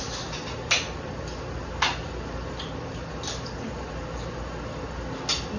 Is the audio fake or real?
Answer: real